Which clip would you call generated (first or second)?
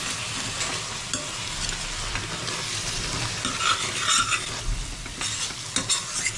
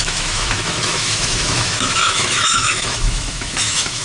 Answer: second